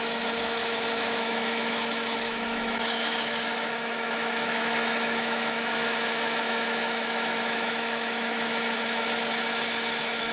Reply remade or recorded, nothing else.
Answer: remade